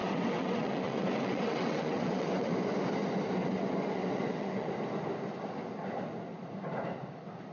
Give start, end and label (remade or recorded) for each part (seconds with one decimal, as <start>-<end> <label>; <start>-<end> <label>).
0.0-2.5 remade; 2.5-3.4 recorded; 3.4-4.7 remade; 4.7-7.5 recorded